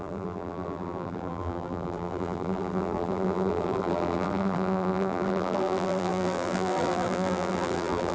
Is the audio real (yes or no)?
no